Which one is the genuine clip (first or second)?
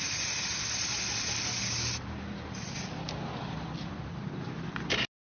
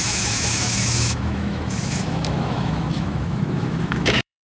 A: first